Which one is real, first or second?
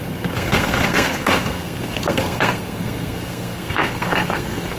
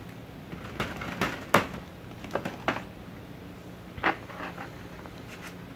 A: second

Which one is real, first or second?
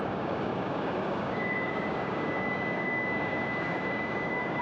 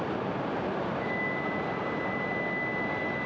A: second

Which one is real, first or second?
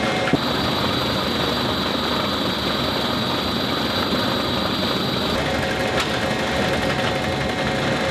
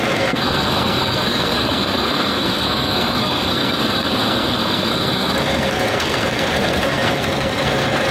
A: first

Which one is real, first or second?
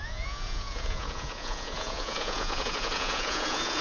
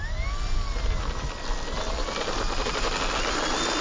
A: second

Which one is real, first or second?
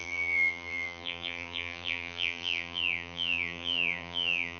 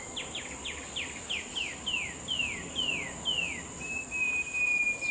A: second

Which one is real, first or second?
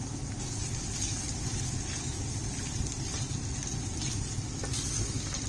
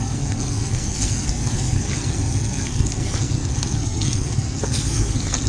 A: first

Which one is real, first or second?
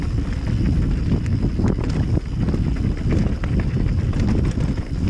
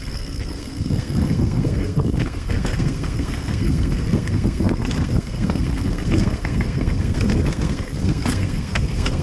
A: first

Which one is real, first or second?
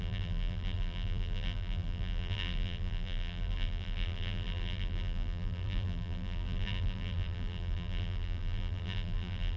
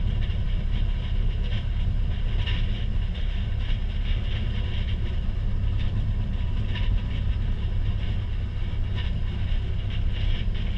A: second